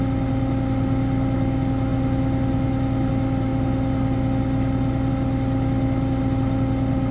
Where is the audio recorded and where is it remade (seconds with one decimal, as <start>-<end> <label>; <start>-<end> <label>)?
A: 0.0-7.1 recorded